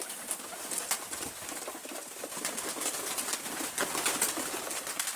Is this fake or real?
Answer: real